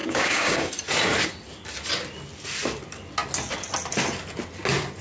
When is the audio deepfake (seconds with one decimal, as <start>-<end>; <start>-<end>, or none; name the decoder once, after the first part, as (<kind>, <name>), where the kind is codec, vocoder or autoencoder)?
0.0-0.7 (codec, DAC)